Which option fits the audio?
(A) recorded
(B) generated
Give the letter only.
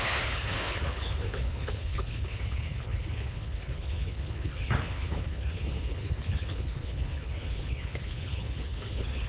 B